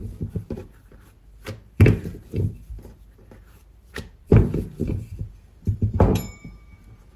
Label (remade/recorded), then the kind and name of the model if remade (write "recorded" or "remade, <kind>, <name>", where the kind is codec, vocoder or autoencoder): remade, vocoder, BigVGAN v2